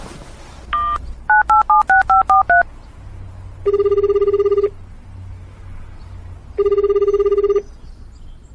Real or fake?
real